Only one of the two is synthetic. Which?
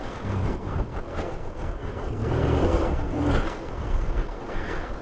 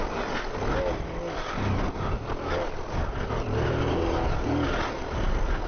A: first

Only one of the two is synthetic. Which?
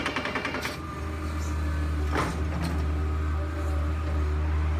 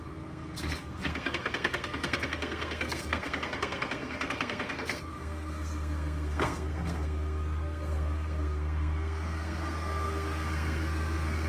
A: second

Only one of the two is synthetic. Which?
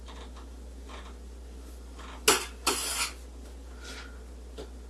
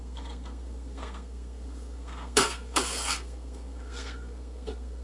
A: second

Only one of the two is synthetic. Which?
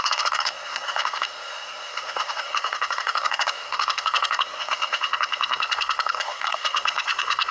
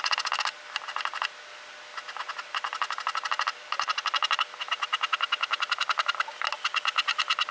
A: first